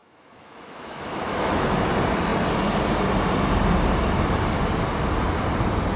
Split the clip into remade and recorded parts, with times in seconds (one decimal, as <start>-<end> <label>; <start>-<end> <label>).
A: 0.0-1.9 remade; 1.9-6.0 recorded